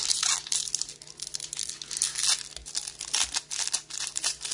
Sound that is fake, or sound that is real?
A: real